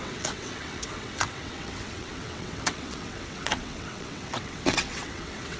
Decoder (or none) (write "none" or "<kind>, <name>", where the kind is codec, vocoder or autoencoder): vocoder, WaveNeXt